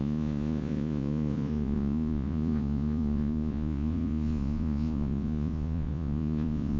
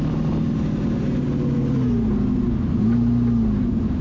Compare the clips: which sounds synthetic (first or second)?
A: first